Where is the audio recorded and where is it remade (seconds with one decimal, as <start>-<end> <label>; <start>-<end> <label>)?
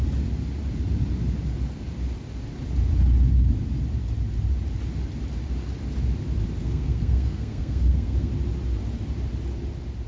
0.0-6.6 recorded; 6.6-8.3 remade; 8.3-10.1 recorded